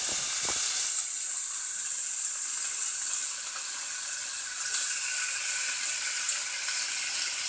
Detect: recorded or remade recorded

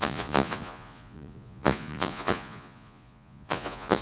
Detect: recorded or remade remade